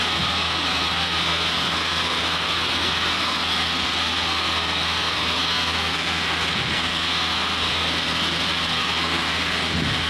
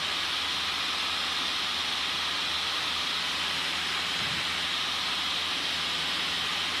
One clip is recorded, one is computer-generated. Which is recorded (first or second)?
second